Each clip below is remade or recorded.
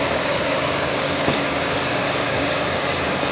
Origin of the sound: remade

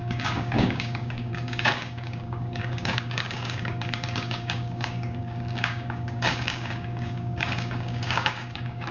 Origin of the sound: remade